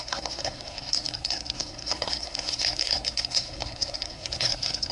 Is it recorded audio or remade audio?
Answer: remade